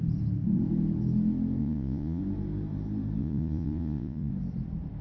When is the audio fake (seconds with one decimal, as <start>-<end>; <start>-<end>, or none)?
1.6-2.2; 3.2-4.3